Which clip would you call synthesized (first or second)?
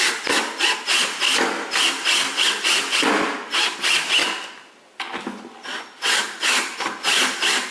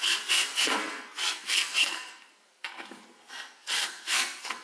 second